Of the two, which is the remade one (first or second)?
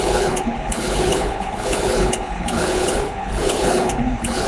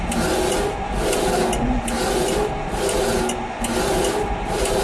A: first